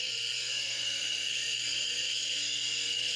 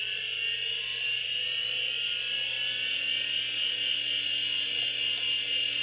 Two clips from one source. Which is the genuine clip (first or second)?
second